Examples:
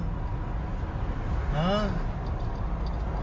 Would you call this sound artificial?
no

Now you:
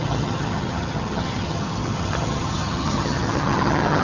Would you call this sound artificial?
yes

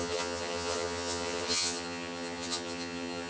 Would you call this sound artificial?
yes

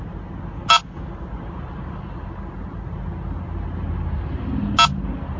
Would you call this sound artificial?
no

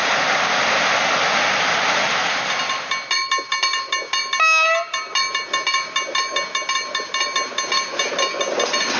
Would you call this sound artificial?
no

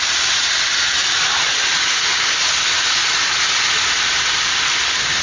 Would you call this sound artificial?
no